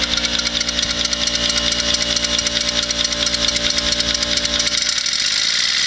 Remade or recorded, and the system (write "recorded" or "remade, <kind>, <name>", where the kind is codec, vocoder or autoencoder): recorded